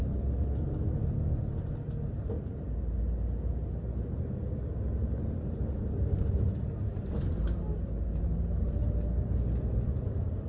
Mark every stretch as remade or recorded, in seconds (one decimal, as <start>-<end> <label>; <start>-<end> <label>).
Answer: 0.0-10.5 recorded